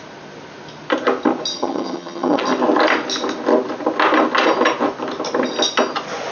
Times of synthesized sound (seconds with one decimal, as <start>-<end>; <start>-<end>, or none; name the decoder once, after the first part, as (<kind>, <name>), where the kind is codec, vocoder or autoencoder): 1.5-2.4 (vocoder, HiFi-GAN)